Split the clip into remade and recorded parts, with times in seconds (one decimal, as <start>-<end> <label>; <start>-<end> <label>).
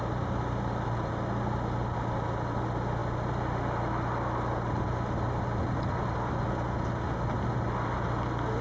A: 0.0-8.6 recorded